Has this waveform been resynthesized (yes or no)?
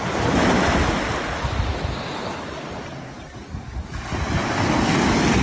no